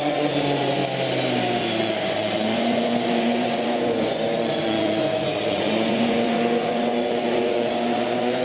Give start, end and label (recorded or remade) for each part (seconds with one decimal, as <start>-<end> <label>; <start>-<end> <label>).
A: 0.0-0.8 remade; 0.8-1.8 recorded; 1.8-8.4 remade

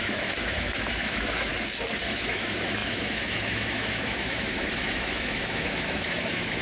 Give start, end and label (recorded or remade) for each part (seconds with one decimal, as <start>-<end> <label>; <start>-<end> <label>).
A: 0.0-1.5 remade; 1.5-2.0 recorded; 2.0-6.6 remade

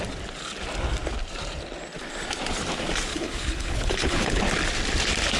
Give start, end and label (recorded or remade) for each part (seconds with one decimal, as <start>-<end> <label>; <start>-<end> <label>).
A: 0.0-3.1 recorded; 3.1-4.4 remade; 4.4-5.4 recorded

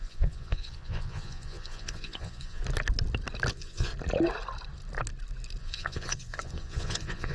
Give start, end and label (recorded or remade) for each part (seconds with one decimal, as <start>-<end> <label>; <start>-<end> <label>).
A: 0.0-2.6 remade; 2.6-3.5 recorded; 3.5-3.9 remade; 3.9-5.6 recorded; 5.6-7.3 remade

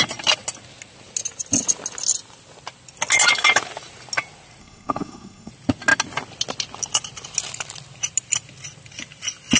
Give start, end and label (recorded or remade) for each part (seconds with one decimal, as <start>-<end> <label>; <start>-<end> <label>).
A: 0.0-4.6 recorded; 4.6-5.5 remade; 5.5-9.6 recorded

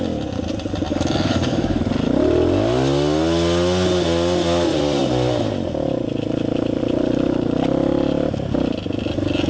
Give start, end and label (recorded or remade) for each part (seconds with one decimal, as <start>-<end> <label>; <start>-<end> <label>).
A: 0.0-0.9 recorded; 0.9-1.8 remade; 1.8-9.5 recorded

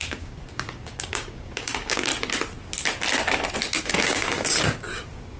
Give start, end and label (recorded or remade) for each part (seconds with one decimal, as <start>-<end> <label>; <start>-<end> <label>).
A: 0.0-2.1 remade; 2.1-3.8 recorded; 3.8-5.4 remade

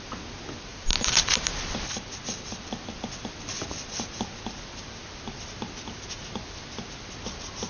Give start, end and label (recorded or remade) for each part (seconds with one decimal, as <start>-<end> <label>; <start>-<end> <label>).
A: 0.0-0.7 recorded; 0.7-1.3 remade; 1.3-7.7 recorded